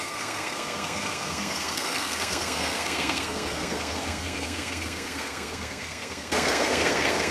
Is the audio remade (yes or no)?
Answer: yes